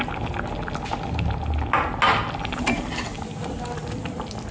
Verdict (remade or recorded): recorded